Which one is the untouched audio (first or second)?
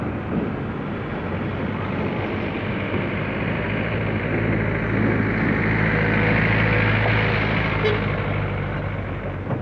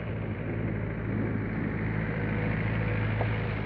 first